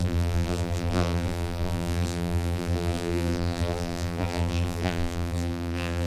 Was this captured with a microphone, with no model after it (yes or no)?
no